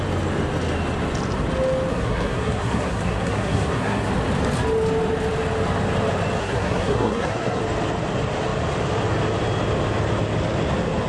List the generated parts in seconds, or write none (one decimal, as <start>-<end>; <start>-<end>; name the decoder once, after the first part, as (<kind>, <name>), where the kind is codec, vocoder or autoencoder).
1.9-4.1 (codec, SNAC); 6.4-7.6